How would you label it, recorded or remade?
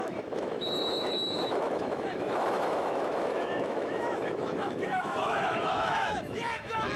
remade